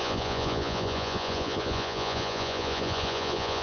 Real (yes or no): no